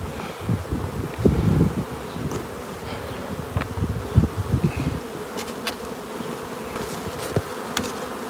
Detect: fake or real real